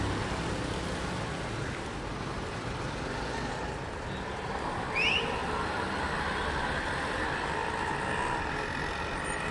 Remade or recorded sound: recorded